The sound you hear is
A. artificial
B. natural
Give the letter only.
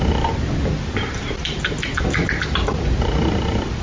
B